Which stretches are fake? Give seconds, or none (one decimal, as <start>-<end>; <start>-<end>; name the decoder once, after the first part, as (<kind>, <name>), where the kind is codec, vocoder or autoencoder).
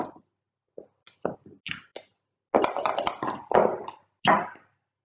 none